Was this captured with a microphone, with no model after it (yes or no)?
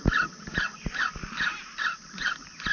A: yes